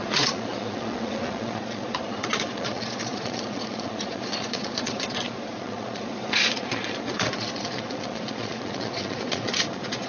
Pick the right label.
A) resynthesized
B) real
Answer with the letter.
A